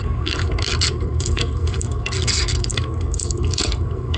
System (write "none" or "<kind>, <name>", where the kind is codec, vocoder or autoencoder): codec, SNAC